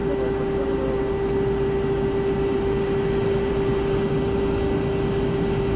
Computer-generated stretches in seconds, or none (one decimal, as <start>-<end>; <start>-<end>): none